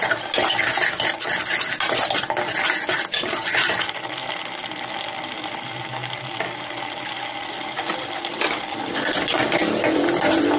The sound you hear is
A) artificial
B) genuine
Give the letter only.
B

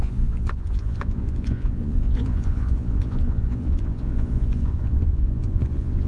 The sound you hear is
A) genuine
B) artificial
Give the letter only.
B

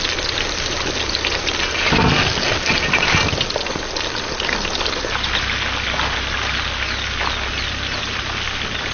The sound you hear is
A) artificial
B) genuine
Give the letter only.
B